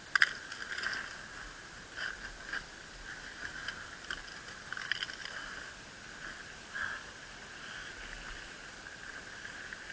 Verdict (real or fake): real